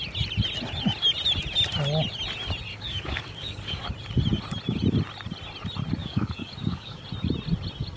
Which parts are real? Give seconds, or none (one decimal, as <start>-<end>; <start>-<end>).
0.0-2.7; 3.9-6.0; 7.0-8.0

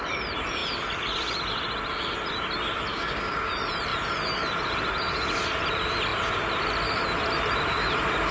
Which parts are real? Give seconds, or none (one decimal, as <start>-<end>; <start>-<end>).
0.0-2.9; 3.5-8.3